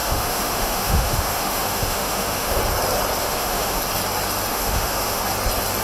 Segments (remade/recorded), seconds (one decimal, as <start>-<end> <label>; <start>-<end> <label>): 0.0-2.6 remade; 2.6-3.2 recorded; 3.2-3.8 remade; 3.8-4.5 recorded; 4.5-5.2 remade; 5.2-5.8 recorded